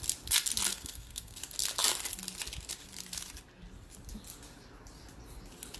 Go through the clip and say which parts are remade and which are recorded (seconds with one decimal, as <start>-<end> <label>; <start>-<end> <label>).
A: 0.0-0.7 recorded; 0.7-1.4 remade; 1.4-5.8 recorded